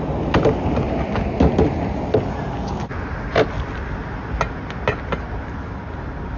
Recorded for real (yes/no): yes